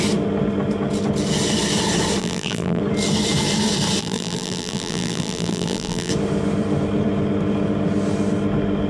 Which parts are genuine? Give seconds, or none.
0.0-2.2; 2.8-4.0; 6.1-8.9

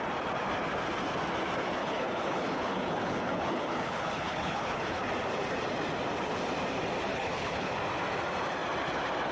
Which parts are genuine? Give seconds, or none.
0.0-1.8; 5.1-7.1; 7.7-9.3